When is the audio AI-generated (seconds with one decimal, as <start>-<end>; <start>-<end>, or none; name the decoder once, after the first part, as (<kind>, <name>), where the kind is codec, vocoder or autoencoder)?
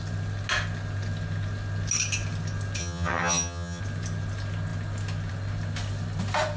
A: 2.8-3.8 (vocoder, HiFi-GAN)